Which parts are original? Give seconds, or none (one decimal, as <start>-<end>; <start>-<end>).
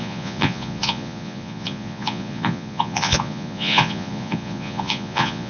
none